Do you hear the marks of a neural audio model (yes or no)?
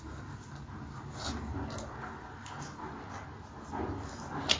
no